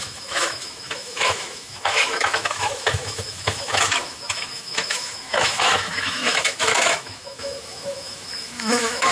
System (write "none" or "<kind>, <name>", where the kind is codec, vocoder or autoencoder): autoencoder, DAC-VAE